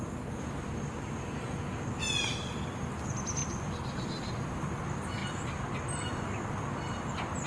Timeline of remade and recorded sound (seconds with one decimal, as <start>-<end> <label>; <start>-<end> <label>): 0.0-3.4 recorded; 3.4-4.3 remade; 4.3-7.5 recorded